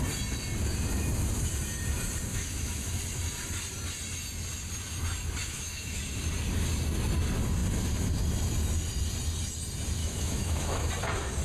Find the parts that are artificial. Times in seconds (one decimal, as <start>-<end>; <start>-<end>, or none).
2.3-3.0; 5.4-6.0; 10.0-10.9